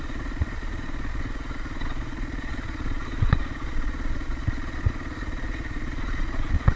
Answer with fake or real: fake